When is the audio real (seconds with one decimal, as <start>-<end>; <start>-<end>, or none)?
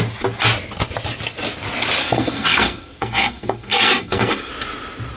0.0-2.0; 4.5-5.2